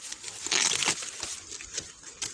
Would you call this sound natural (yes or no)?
yes